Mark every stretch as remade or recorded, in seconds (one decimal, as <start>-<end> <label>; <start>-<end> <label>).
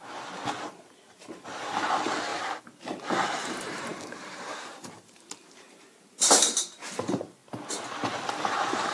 0.0-7.4 remade; 7.4-8.5 recorded; 8.5-8.9 remade